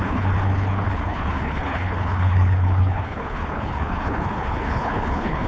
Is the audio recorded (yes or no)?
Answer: no